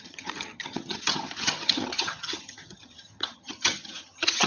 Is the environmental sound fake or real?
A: fake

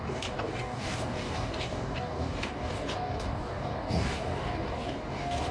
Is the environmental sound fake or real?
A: fake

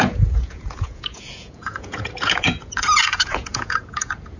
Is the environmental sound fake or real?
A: fake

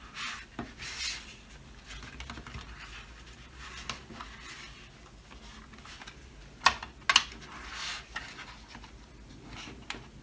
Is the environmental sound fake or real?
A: real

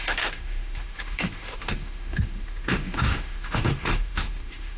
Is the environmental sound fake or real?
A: fake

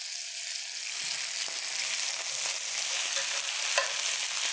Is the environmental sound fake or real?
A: real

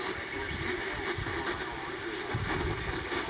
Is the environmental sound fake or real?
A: real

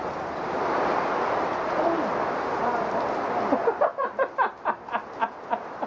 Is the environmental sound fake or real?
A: real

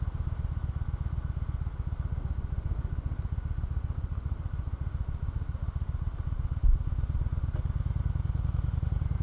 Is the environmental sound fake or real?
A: real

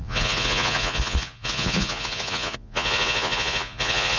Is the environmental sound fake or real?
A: fake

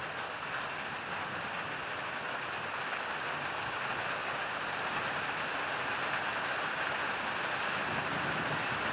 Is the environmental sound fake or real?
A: real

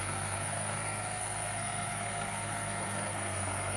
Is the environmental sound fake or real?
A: fake